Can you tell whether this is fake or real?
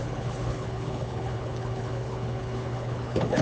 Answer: fake